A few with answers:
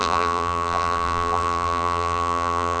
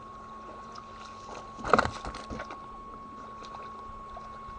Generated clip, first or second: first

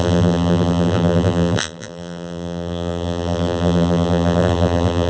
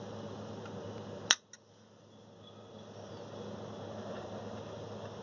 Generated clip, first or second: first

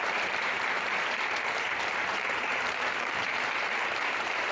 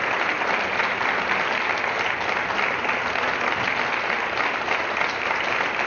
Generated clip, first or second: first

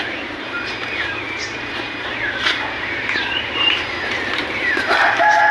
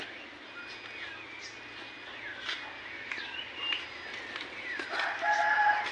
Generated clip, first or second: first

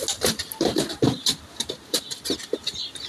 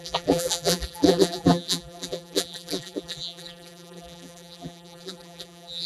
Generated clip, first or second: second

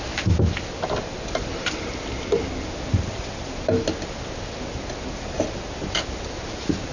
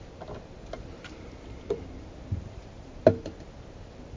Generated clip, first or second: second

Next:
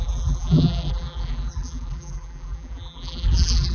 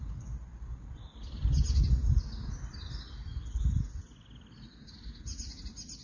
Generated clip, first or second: first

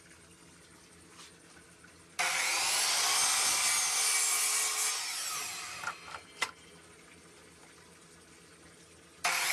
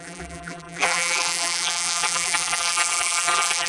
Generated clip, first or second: second